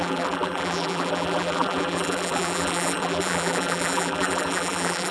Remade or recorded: remade